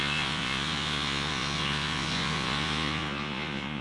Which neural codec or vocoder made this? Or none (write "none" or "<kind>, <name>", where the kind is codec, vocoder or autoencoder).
vocoder, Vocos